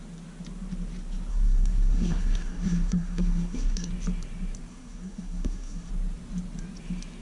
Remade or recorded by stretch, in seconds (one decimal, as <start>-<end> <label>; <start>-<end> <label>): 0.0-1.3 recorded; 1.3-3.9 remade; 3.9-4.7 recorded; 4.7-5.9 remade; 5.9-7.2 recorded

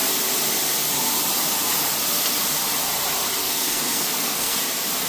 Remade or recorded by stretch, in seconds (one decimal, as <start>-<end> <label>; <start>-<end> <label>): 0.0-3.4 recorded; 3.4-4.6 remade; 4.6-5.1 recorded

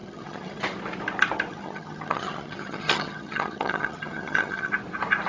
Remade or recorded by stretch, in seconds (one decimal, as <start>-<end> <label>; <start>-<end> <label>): 0.0-0.6 remade; 0.6-1.5 recorded; 1.5-4.7 remade; 4.7-5.3 recorded